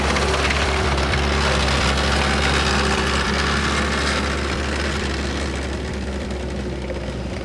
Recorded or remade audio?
recorded